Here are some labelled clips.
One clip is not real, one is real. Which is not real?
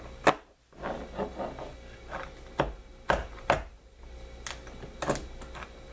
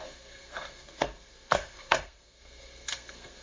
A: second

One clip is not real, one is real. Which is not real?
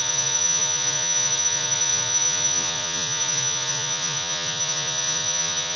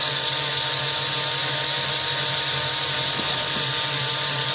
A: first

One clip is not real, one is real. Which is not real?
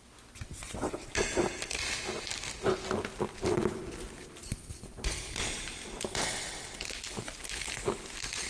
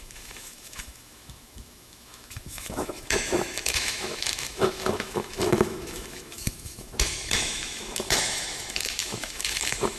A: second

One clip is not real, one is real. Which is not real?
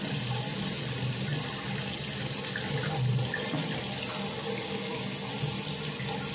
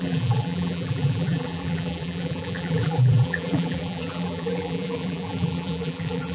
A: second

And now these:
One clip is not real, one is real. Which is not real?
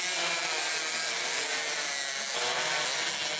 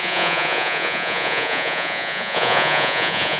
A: second